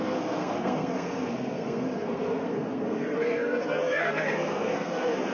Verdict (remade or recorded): remade